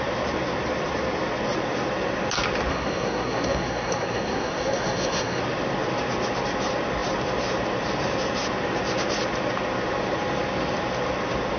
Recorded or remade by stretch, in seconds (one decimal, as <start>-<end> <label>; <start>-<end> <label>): 0.0-2.7 recorded; 2.7-5.4 remade; 5.4-11.6 recorded